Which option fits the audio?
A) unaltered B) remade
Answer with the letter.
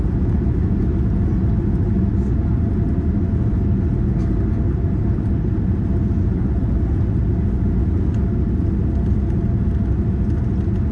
A